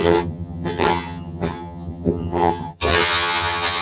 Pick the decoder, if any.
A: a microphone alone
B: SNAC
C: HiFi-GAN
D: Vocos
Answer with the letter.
C